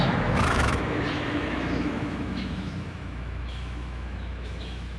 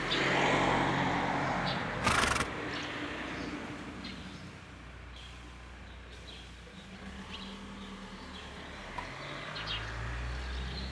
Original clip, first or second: second